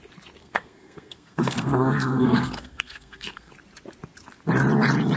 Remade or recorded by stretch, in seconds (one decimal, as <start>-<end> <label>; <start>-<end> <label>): 0.0-0.4 recorded; 0.4-3.5 remade; 3.5-5.2 recorded